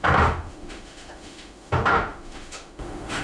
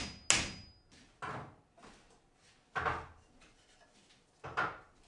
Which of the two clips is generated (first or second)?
first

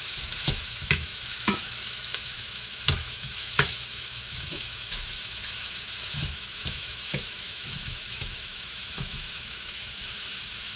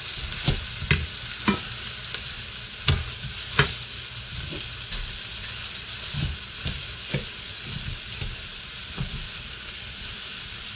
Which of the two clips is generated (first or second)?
first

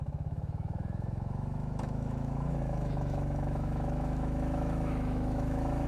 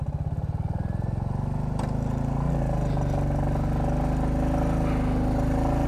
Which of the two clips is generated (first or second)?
first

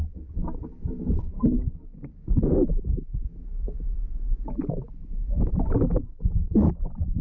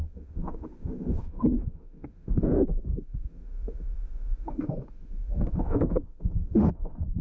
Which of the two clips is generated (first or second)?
second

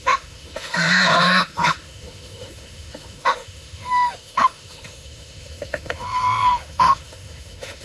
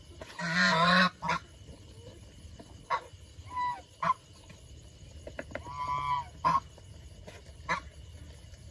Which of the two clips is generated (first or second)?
first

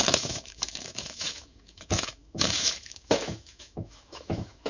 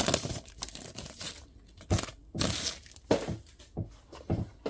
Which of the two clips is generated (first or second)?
first